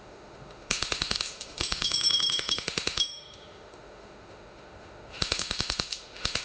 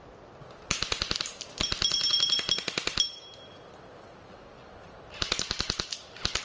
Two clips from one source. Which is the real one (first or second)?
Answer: second